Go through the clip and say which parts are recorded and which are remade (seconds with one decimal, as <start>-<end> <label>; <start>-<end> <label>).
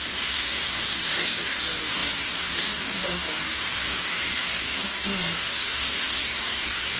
0.0-7.0 remade